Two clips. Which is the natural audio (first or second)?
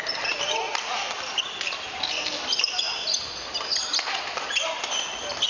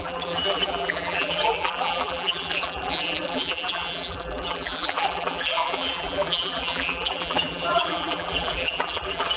first